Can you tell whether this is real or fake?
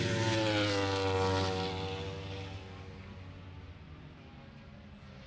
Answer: real